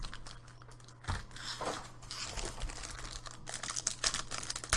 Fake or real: real